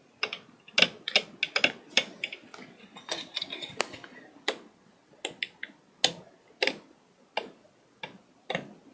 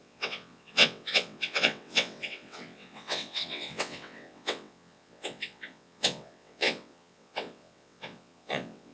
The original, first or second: first